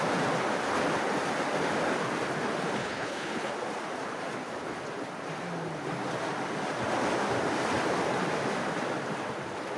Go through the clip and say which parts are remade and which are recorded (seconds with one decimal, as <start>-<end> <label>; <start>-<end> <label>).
0.0-2.8 recorded; 2.8-3.5 remade; 3.5-9.8 recorded